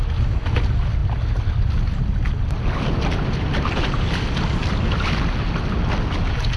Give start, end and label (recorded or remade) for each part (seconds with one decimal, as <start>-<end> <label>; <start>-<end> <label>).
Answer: 0.0-6.6 recorded